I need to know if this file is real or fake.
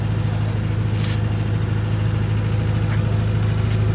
real